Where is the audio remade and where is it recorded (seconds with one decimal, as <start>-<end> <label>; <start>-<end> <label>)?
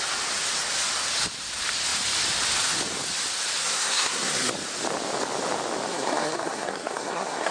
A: 0.0-3.6 recorded; 3.6-4.5 remade; 4.5-5.9 recorded; 5.9-7.5 remade